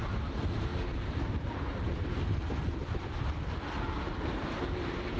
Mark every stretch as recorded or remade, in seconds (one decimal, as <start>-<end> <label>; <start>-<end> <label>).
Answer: 0.0-5.2 remade